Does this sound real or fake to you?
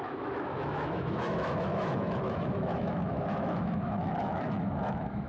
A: fake